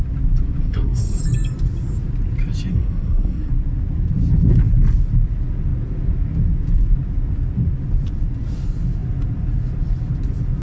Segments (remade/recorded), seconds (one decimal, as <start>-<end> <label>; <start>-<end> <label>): 0.0-0.6 recorded; 0.6-1.2 remade; 1.2-2.7 recorded; 2.7-3.5 remade; 3.5-10.6 recorded